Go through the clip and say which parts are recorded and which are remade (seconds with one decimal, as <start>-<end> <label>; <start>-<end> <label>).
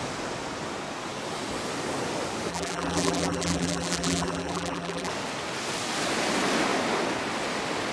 0.0-2.5 recorded; 2.5-5.1 remade; 5.1-7.9 recorded